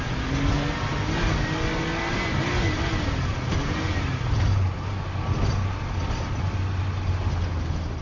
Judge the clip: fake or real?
real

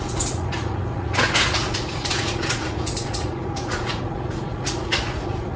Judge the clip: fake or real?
fake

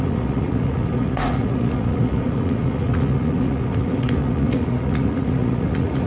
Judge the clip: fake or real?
fake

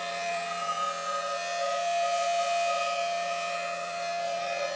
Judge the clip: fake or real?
fake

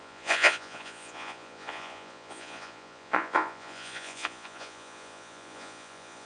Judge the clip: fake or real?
fake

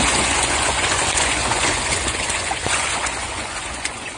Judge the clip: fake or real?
fake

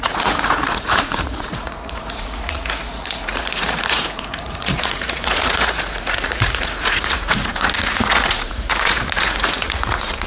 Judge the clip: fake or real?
fake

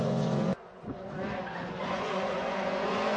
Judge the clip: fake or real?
fake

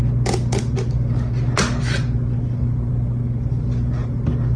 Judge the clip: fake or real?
real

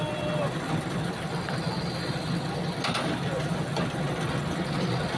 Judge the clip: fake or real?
real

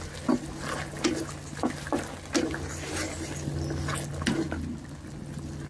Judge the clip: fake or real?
real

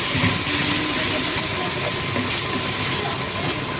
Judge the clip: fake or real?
real